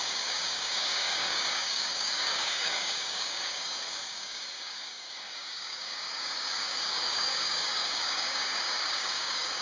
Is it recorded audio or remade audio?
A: remade